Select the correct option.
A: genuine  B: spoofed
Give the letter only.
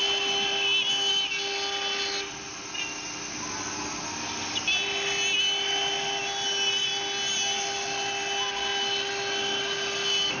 A